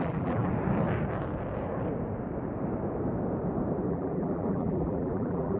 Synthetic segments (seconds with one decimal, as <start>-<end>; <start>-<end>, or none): 0.0-0.5; 3.9-5.6